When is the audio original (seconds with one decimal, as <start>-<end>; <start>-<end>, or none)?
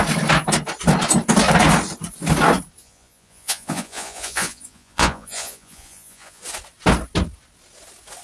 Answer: 0.0-2.8; 6.4-8.2